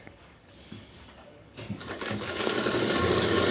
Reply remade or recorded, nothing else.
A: remade